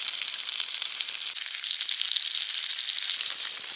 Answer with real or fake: real